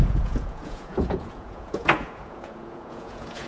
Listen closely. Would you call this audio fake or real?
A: fake